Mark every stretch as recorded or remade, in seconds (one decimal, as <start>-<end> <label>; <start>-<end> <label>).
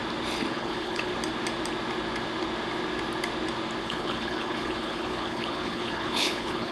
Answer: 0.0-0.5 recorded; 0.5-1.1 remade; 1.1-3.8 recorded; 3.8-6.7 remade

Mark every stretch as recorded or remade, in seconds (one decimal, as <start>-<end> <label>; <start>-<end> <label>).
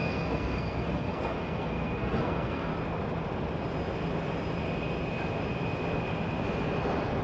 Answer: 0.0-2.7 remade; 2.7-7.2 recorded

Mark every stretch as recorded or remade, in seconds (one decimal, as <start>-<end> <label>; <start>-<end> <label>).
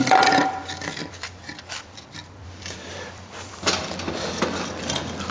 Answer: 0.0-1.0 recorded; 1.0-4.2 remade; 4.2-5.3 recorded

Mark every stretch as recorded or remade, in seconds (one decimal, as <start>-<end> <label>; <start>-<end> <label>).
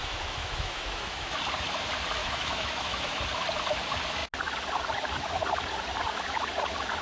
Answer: 0.0-1.4 remade; 1.4-2.2 recorded; 2.2-3.2 remade; 3.2-7.0 recorded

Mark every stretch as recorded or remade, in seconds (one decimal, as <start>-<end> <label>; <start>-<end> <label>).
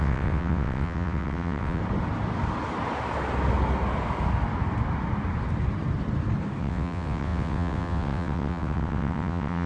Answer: 0.0-1.8 remade; 1.8-6.6 recorded; 6.6-9.7 remade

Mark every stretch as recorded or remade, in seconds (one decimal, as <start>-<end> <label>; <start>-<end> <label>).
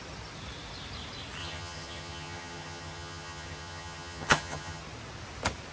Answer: 0.0-1.4 recorded; 1.4-4.8 remade; 4.8-5.7 recorded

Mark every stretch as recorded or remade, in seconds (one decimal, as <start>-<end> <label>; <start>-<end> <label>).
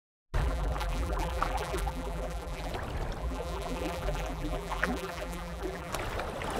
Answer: 0.0-0.4 recorded; 0.4-2.7 remade; 2.7-3.2 recorded; 3.2-5.9 remade; 5.9-6.6 recorded